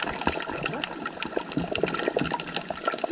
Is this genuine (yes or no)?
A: yes